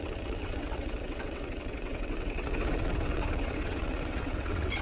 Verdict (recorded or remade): remade